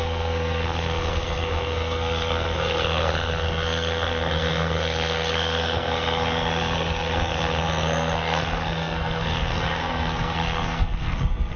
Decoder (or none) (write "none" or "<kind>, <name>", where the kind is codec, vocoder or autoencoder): codec, SNAC